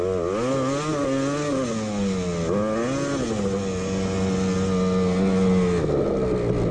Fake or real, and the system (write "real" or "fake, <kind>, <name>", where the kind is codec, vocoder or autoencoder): real